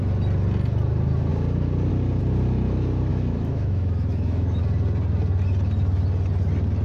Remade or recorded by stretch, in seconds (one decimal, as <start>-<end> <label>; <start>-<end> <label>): 0.0-3.1 recorded; 3.1-4.6 remade; 4.6-6.8 recorded